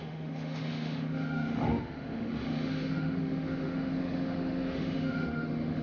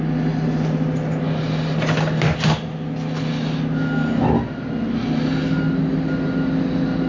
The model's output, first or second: first